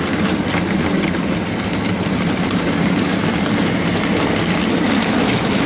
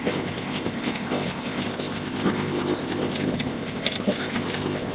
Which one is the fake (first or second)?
second